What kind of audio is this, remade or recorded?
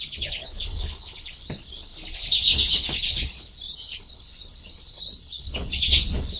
remade